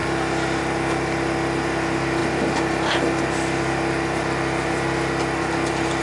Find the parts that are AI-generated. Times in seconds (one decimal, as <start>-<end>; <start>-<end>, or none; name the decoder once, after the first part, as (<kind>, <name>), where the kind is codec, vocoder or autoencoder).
none